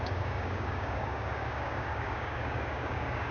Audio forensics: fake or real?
fake